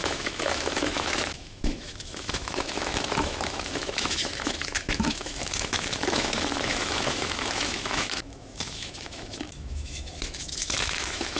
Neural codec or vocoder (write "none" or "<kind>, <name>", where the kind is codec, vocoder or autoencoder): autoencoder, DAC-VAE